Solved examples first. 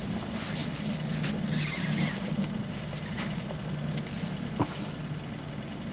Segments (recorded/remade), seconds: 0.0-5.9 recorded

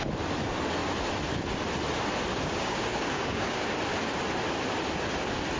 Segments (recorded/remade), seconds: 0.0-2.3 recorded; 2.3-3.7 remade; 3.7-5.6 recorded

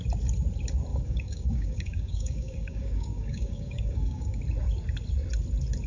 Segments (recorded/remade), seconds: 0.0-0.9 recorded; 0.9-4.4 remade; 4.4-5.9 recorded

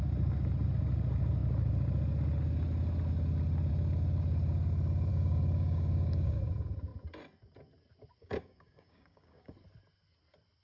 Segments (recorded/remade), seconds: 0.0-5.1 recorded; 5.1-6.4 remade; 6.4-8.2 recorded; 8.2-9.5 remade; 9.5-10.6 recorded

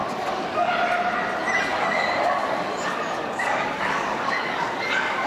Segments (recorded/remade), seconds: 0.0-0.7 remade; 0.7-1.7 recorded; 1.7-5.3 remade

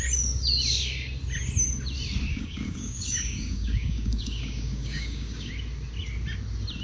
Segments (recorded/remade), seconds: 0.0-2.3 recorded; 2.3-5.5 remade; 5.5-6.8 recorded